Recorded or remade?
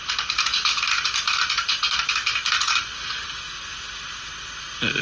recorded